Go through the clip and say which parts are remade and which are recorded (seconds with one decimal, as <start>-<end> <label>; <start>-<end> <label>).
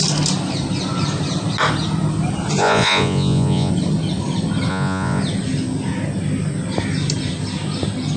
0.0-2.6 recorded; 2.6-3.7 remade; 3.7-4.7 recorded; 4.7-5.2 remade; 5.2-8.2 recorded